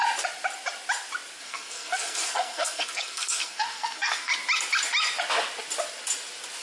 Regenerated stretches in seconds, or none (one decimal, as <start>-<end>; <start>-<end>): 1.4-4.3